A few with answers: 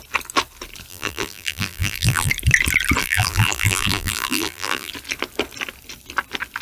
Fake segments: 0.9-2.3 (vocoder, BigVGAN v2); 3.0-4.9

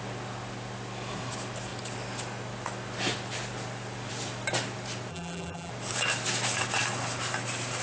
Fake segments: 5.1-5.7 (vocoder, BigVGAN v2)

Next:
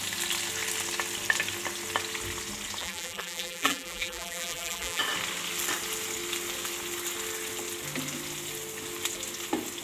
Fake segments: 2.8-5.0 (vocoder, BigVGAN v2)

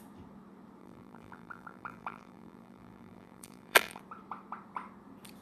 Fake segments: 0.8-4.0 (vocoder, BigVGAN v2)

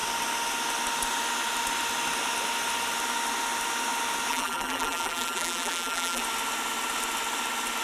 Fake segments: 4.3-6.2 (vocoder, BigVGAN v2)